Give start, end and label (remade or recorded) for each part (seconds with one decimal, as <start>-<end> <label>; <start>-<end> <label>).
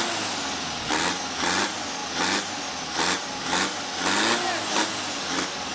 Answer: 0.0-5.7 recorded